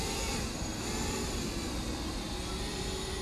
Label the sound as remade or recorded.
recorded